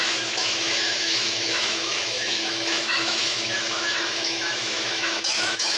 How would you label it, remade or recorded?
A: remade